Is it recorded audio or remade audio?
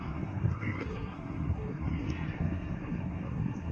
remade